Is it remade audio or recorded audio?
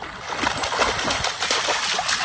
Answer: recorded